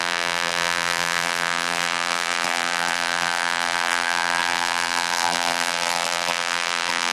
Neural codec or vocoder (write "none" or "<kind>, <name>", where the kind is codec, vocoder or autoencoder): vocoder, BigVGAN v2